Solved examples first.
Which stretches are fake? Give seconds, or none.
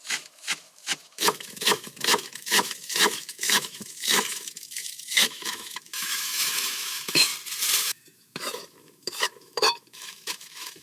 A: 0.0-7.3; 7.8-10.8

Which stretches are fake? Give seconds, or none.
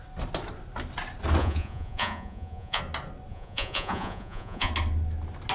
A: 1.4-2.8; 3.3-4.7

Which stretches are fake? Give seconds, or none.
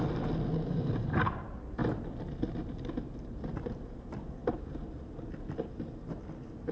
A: none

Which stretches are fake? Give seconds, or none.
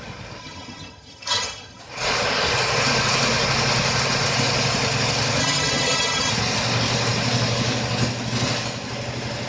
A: 0.4-1.8; 5.4-6.3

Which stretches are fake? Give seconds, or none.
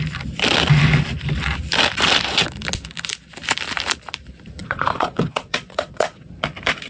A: 4.6-6.3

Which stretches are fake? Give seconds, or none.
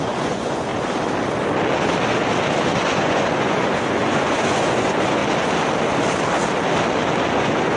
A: 0.0-0.7; 2.8-5.2; 7.3-7.8